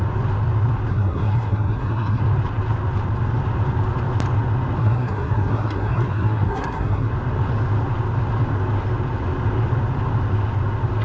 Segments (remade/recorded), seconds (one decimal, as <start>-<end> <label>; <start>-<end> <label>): 0.0-0.9 recorded; 0.9-2.2 remade; 2.2-4.8 recorded; 4.8-7.1 remade; 7.1-11.0 recorded